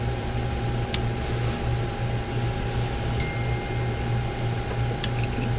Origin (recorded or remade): recorded